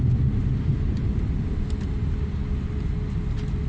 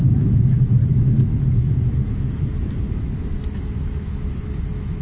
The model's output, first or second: second